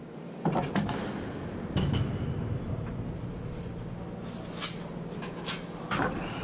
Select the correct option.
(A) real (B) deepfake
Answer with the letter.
A